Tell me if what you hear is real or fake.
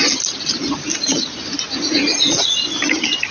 real